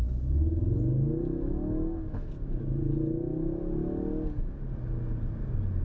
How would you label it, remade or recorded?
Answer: recorded